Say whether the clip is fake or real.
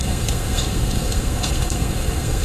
fake